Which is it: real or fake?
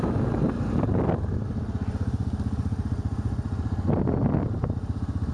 real